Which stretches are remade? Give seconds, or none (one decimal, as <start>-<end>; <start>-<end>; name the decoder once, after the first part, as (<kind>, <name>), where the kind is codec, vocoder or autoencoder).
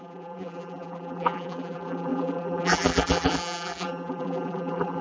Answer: 0.0-5.0 (vocoder, BigVGAN v2)